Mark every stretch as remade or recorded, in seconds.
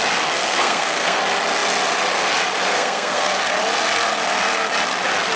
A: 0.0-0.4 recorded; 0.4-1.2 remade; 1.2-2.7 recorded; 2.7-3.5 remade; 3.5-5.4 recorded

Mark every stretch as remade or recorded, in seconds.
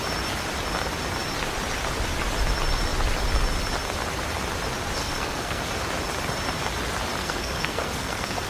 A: 0.0-5.0 recorded; 5.0-5.6 remade; 5.6-7.2 recorded; 7.2-8.5 remade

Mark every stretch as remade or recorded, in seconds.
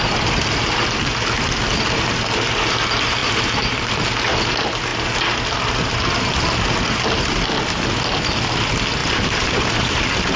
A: 0.0-3.2 recorded; 3.2-3.9 remade; 3.9-9.0 recorded; 9.0-10.0 remade; 10.0-10.4 recorded